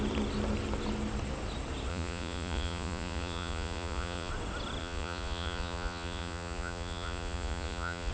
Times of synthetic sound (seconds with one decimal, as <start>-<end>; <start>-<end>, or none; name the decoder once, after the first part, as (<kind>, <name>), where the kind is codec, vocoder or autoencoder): 1.9-4.3 (vocoder, Vocos); 4.8-8.1